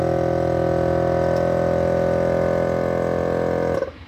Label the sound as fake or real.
real